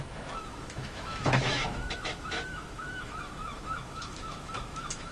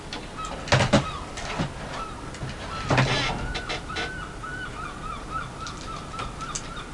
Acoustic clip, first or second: second